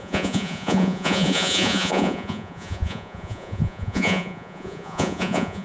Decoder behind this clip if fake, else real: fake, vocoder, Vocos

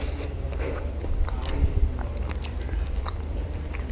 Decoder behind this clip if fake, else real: fake, vocoder, BigVGAN v2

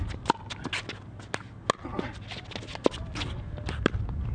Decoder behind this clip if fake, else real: real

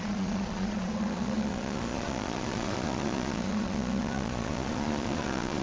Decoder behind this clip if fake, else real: fake, vocoder, Vocos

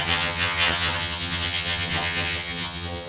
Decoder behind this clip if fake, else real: fake, vocoder, HiFi-GAN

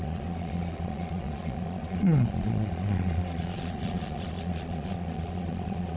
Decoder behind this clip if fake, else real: fake, vocoder, Vocos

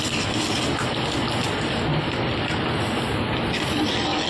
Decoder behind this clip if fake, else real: real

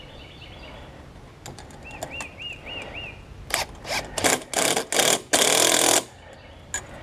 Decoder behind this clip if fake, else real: real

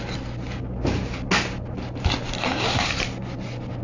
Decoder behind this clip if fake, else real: real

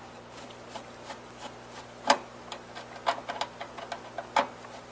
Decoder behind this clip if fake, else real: real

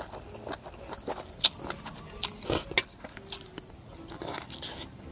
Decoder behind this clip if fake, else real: real